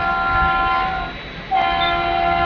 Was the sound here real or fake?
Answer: real